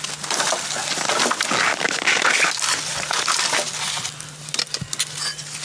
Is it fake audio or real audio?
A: real